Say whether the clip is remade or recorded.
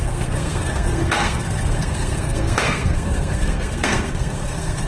remade